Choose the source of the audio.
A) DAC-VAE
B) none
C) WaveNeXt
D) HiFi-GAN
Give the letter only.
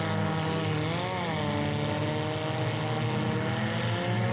B